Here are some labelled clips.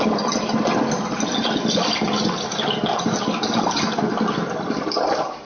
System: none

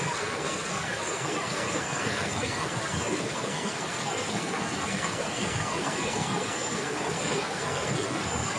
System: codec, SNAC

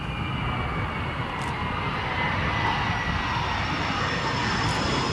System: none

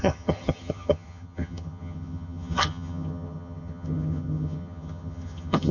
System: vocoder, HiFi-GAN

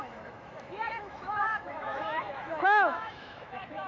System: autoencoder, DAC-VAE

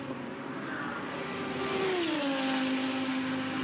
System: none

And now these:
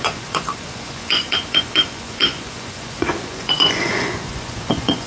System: vocoder, Vocos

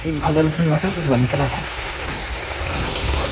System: codec, SNAC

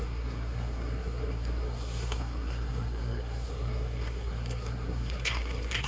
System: codec, SNAC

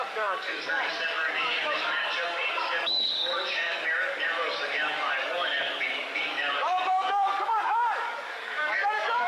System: codec, DAC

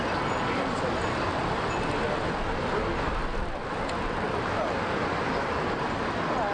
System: none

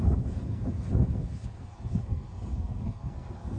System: codec, SNAC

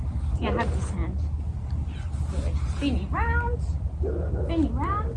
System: none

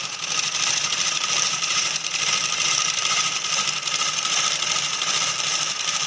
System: vocoder, BigVGAN v2